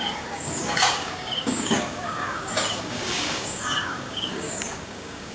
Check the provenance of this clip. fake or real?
fake